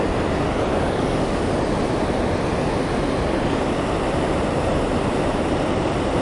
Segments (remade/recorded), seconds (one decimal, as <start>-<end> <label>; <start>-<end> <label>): 0.0-0.7 recorded; 0.7-1.5 remade; 1.5-6.2 recorded